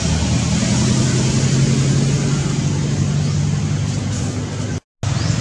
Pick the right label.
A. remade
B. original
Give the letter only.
B